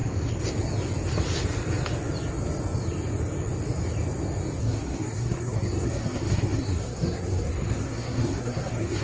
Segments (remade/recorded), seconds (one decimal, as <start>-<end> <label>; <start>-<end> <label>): 0.0-4.6 recorded; 4.6-9.0 remade